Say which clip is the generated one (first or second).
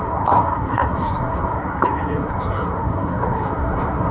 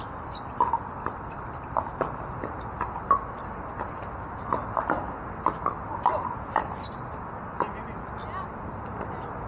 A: first